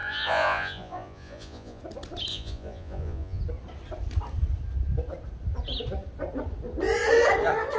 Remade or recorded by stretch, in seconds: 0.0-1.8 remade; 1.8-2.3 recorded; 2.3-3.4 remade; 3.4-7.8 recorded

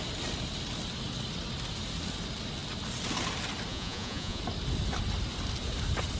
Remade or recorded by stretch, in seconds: 0.0-3.7 recorded; 3.7-4.4 remade; 4.4-6.2 recorded

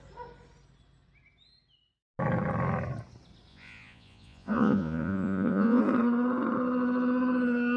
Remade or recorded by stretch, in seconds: 0.0-3.5 recorded; 3.5-5.8 remade; 5.8-7.8 recorded

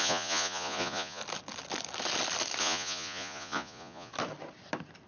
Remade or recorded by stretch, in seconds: 0.0-1.2 remade; 1.2-2.6 recorded; 2.6-4.1 remade; 4.1-5.1 recorded